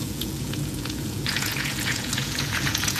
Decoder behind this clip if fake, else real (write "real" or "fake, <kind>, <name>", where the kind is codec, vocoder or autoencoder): fake, vocoder, Vocos